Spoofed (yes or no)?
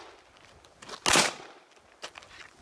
no